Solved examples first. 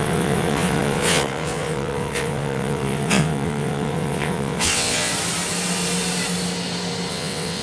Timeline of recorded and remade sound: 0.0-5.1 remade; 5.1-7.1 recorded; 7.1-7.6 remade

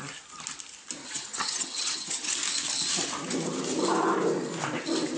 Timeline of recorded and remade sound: 0.0-1.0 recorded; 1.0-2.3 remade; 2.3-5.2 recorded

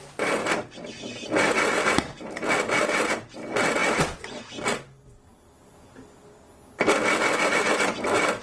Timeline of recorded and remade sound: 0.0-8.4 recorded